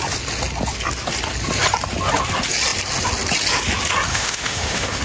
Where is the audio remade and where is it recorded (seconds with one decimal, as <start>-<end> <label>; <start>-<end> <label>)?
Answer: 0.0-4.1 recorded; 4.1-5.0 remade